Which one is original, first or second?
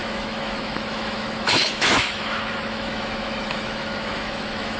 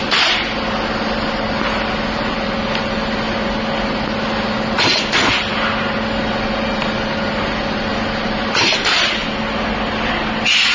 second